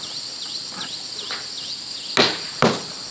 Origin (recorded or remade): recorded